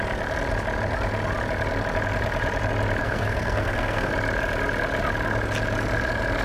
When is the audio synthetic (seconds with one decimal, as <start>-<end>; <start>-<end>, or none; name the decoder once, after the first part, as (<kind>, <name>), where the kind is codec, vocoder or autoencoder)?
3.0-4.1 (codec, SNAC)